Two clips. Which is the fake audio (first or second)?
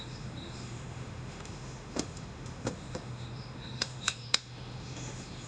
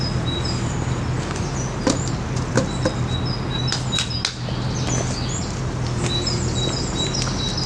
first